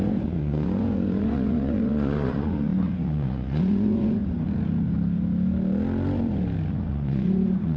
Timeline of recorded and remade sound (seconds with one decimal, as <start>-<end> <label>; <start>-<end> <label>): 0.0-4.2 remade; 4.2-6.9 recorded; 6.9-7.8 remade